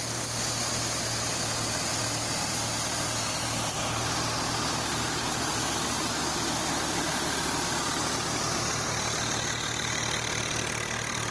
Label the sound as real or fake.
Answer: real